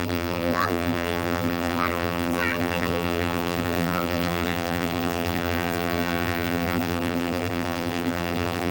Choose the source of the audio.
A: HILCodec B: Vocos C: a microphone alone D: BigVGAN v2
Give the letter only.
D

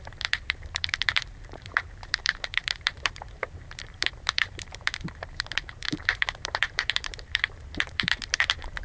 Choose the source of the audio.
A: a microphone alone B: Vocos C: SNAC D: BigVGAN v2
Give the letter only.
D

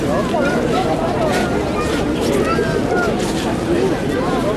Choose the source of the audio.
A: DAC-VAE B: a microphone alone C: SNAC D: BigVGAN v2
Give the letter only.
B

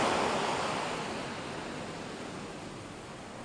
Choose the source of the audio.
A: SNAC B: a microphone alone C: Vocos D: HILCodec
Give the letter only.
B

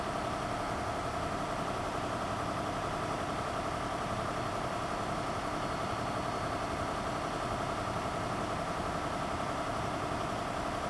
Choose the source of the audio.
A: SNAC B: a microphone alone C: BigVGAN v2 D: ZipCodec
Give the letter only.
B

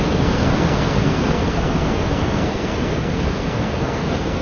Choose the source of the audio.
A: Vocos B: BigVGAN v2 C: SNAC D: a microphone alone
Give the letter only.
C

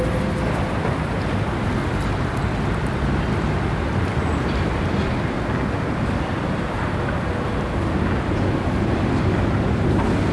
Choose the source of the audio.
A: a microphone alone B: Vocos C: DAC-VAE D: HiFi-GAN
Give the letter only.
A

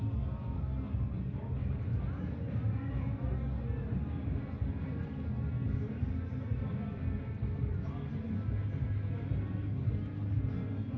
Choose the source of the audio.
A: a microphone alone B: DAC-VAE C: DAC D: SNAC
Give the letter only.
A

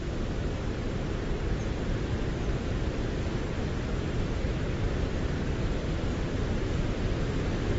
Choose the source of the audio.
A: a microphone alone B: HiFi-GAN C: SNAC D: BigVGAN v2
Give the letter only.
D